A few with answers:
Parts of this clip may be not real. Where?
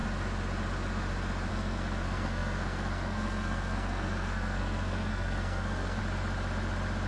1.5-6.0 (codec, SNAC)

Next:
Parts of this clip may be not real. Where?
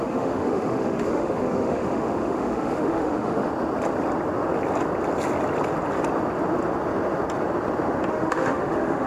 0.0-3.5 (autoencoder, DAC-VAE); 8.1-9.1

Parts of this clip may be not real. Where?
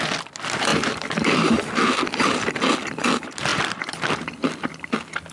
0.7-1.6 (vocoder, BigVGAN v2); 3.5-4.1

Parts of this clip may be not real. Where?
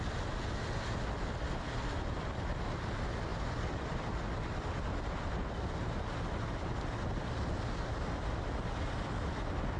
3.3-4.2 (vocoder, BigVGAN v2)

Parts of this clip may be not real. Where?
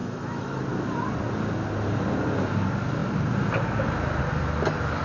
0.0-0.6 (autoencoder, DAC-VAE)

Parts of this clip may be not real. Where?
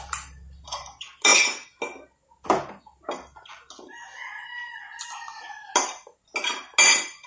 none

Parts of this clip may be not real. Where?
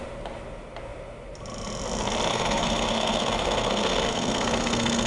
2.3-5.1 (codec, SNAC)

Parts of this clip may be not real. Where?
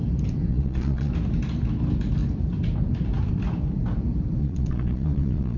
0.5-1.1 (vocoder, Vocos); 4.4-5.6